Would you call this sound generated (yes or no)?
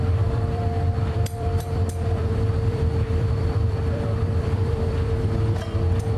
yes